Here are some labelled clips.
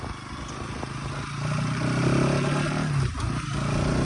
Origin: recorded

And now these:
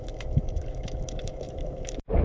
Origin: remade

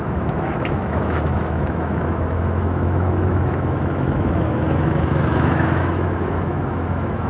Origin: remade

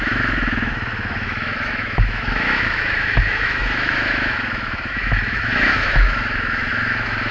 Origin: remade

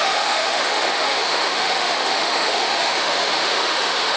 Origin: remade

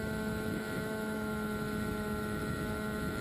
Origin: remade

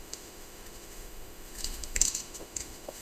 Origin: remade